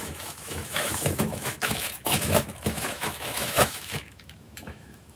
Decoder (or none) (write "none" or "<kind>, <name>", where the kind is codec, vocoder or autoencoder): autoencoder, DAC-VAE